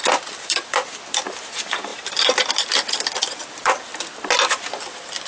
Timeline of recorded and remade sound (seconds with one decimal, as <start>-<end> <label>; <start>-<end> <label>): 0.0-1.9 remade; 1.9-2.5 recorded; 2.5-3.9 remade; 3.9-4.5 recorded; 4.5-5.3 remade